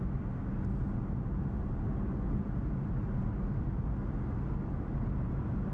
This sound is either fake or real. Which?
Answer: real